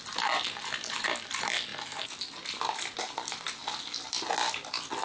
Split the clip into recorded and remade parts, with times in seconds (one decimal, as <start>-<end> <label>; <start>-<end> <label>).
0.0-5.0 recorded